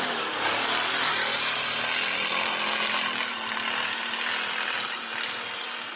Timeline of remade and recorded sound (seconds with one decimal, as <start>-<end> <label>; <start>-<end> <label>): 0.0-6.0 recorded